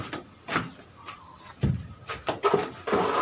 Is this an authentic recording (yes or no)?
yes